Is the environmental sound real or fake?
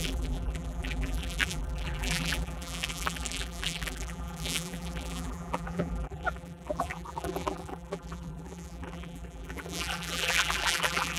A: fake